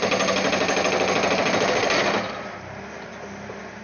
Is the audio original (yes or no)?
yes